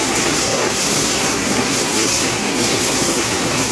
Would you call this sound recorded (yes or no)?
no